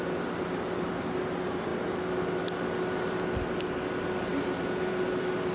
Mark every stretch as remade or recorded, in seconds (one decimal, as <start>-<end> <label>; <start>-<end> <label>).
0.0-5.5 recorded